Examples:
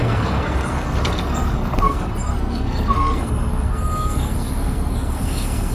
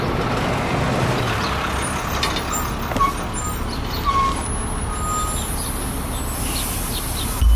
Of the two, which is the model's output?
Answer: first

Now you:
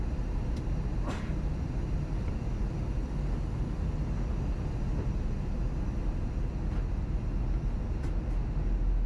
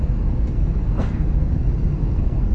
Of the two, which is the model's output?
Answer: second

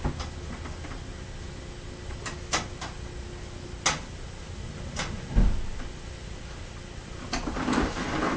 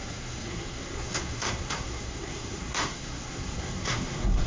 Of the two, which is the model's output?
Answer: second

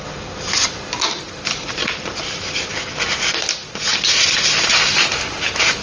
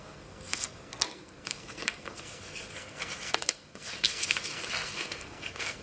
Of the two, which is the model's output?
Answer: second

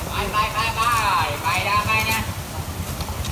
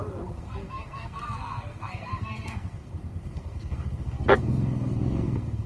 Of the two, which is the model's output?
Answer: second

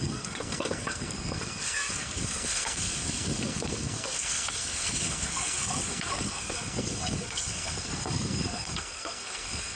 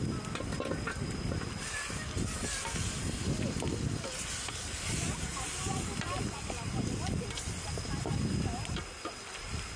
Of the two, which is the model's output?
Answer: first